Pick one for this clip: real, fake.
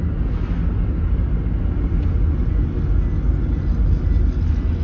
real